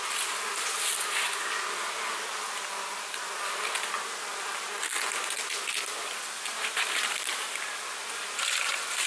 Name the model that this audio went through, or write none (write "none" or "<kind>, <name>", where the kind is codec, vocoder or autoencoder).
none